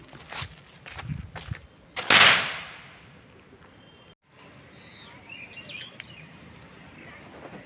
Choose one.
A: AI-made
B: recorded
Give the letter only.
B